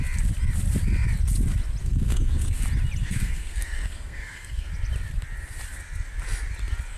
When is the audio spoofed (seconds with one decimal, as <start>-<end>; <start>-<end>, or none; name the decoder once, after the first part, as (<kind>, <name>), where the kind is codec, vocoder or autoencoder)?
1.8-2.6 (codec, SNAC); 3.0-4.7